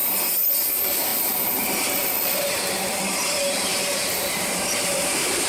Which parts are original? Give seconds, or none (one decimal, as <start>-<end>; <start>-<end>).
0.0-0.7